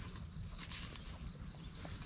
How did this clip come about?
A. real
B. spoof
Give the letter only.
A